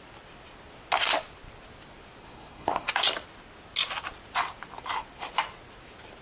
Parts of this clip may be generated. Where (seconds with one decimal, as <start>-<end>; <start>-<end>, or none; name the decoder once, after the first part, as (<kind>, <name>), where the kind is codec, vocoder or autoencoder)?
2.2-2.9 (codec, SNAC)